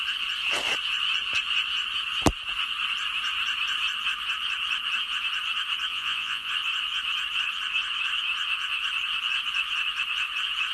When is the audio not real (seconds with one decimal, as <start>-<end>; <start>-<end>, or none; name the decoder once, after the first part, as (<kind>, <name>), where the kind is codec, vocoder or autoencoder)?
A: 5.9-6.5 (vocoder, Vocos)